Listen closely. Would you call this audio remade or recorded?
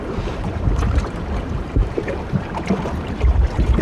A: remade